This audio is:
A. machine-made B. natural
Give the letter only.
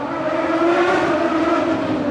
B